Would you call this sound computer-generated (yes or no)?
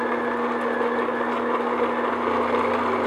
no